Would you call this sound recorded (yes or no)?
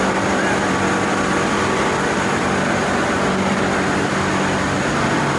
yes